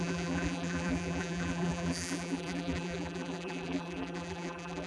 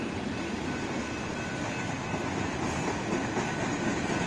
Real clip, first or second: second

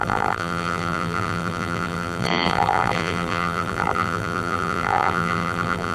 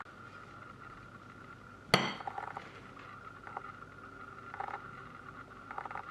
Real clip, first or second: second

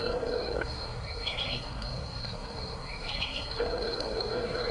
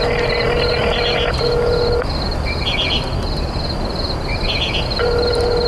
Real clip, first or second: second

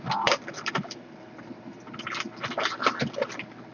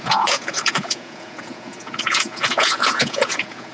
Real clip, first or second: first